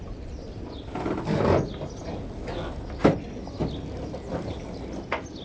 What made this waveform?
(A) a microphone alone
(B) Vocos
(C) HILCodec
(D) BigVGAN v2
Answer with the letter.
A